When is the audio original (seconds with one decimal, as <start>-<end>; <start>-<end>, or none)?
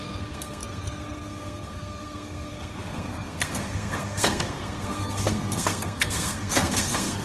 none